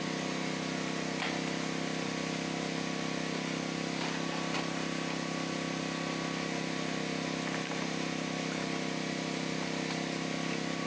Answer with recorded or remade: recorded